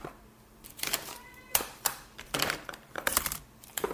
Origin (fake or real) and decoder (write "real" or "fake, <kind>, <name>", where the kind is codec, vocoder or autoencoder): fake, vocoder, BigVGAN v2